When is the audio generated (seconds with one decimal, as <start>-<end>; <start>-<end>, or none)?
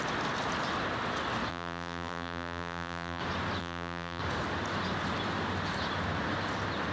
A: 1.5-3.2; 3.6-4.2